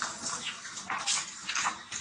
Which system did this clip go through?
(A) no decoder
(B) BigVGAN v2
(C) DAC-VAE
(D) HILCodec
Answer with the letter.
A